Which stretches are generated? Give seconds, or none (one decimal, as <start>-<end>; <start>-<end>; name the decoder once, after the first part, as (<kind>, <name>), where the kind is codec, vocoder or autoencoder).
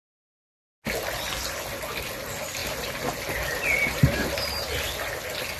none